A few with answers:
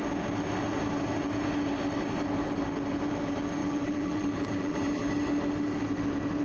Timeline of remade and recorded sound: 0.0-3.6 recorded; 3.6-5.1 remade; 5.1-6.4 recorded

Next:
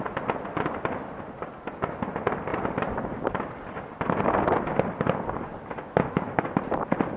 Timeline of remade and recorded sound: 0.0-7.2 remade

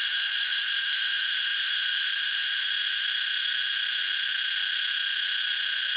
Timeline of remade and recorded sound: 0.0-2.4 remade; 2.4-6.0 recorded

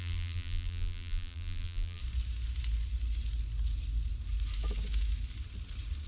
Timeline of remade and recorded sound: 0.0-2.0 remade; 2.0-6.1 recorded